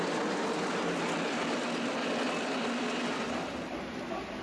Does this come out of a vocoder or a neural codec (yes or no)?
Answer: no